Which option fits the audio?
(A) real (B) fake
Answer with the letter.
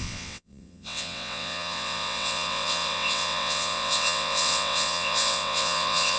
B